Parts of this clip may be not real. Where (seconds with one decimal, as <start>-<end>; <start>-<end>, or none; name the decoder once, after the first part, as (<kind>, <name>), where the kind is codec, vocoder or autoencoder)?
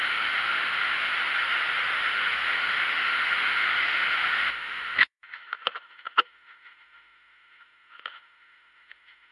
0.0-1.1 (autoencoder, DAC-VAE); 2.0-9.3